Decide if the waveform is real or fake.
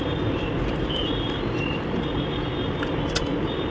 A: real